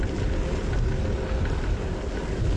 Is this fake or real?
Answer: real